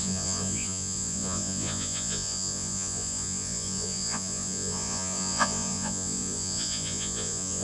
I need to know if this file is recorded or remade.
remade